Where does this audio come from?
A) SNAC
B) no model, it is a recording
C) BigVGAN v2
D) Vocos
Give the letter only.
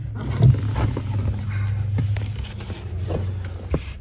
B